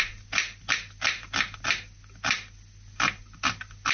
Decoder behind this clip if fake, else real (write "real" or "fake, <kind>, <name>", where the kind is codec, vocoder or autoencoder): real